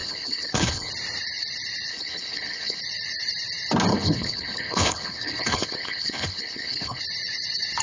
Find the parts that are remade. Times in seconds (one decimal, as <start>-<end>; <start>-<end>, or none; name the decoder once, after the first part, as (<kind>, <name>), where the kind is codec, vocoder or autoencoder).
0.0-0.9 (codec, HILCodec); 1.9-2.8; 3.9-7.0